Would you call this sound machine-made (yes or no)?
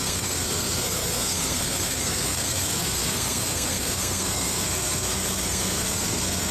yes